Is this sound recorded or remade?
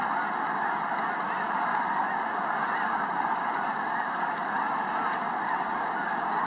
recorded